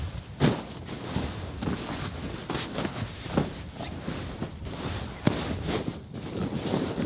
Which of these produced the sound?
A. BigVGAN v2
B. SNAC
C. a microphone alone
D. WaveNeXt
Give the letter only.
C